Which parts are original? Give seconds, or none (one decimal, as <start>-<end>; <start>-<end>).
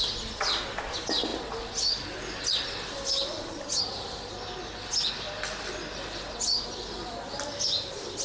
0.0-8.2